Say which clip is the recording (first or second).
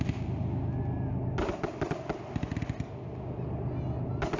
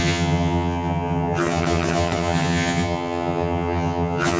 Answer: first